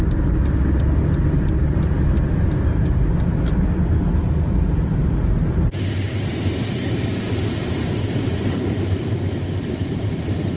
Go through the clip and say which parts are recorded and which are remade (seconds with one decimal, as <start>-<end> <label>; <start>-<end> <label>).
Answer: 0.0-7.7 recorded; 7.7-10.6 remade